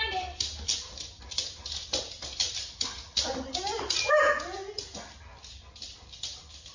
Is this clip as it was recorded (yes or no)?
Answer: yes